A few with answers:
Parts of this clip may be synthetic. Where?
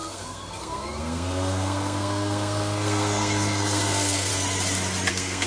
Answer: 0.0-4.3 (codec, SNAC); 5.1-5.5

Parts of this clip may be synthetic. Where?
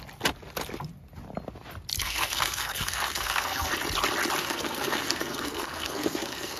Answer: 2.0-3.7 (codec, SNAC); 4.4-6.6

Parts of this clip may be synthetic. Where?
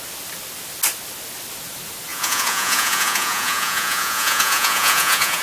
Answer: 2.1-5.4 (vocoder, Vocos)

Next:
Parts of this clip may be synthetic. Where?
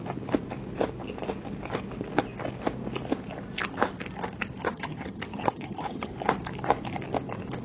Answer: 4.6-6.1 (vocoder, HiFi-GAN)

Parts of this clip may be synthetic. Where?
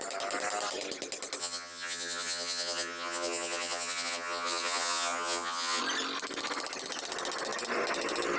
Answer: 1.4-5.8 (vocoder, HiFi-GAN)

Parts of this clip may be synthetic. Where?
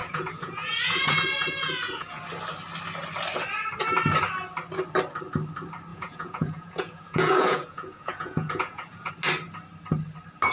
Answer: 0.0-2.2 (vocoder, Vocos); 5.9-9.1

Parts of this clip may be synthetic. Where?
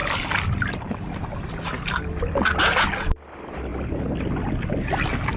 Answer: none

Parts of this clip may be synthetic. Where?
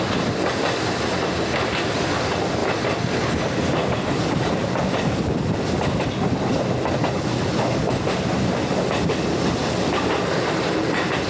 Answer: 2.6-4.3 (vocoder, BigVGAN v2)